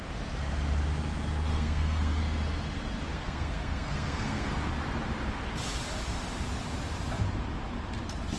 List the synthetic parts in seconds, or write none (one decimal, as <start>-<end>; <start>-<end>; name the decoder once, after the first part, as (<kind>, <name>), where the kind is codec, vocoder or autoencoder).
1.5-2.2 (codec, SNAC); 3.1-4.5

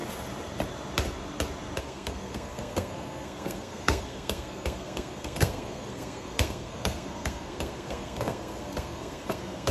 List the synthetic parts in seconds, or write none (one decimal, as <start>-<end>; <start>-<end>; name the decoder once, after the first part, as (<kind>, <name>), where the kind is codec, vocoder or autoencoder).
1.8-9.7 (codec, SNAC)

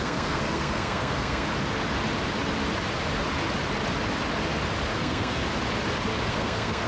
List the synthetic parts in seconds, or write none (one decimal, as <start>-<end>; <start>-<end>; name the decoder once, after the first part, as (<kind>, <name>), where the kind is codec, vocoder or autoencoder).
0.0-1.5 (codec, SNAC); 5.0-5.4; 6.3-6.9

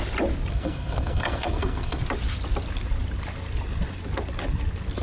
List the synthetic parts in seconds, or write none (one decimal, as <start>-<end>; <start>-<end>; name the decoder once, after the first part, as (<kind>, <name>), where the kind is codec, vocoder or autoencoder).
0.5-2.0 (codec, SNAC)

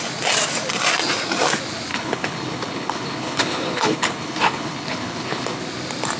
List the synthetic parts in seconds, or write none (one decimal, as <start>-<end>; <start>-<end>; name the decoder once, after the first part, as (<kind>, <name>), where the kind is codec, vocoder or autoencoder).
1.9-5.6 (codec, HILCodec)